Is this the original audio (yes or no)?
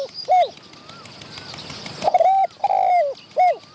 yes